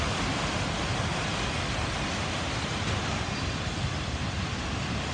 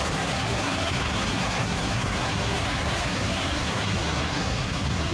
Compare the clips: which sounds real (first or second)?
first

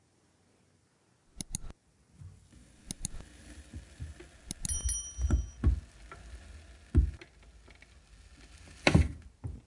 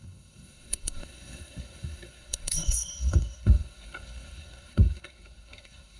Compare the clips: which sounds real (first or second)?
first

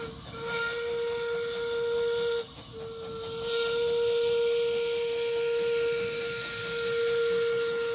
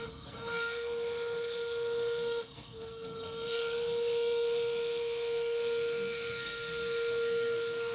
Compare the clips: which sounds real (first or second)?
first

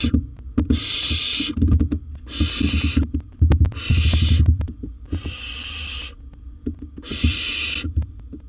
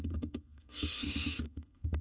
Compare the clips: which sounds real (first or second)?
first